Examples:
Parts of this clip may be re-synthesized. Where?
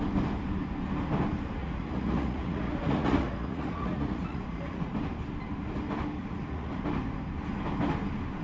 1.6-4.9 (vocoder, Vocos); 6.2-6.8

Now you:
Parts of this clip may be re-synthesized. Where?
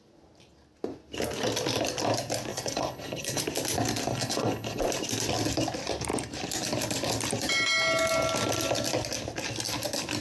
2.5-3.4 (codec, HILCodec); 4.1-4.8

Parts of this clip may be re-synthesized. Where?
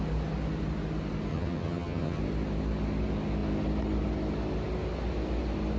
1.3-2.2 (vocoder, HiFi-GAN)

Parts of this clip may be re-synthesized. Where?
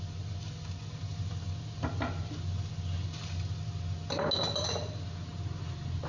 none